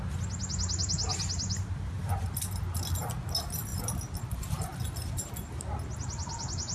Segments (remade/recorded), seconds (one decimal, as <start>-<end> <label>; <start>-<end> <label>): 0.0-6.7 recorded